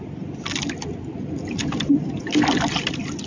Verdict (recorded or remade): recorded